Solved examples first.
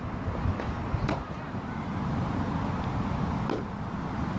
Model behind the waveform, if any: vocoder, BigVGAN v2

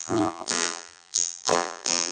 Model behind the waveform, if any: vocoder, BigVGAN v2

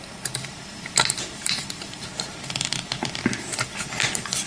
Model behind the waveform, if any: vocoder, BigVGAN v2